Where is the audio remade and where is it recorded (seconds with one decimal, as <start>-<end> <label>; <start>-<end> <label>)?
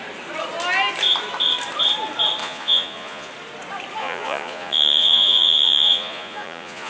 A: 0.0-2.4 recorded; 2.4-3.3 remade; 3.3-4.0 recorded; 4.0-6.9 remade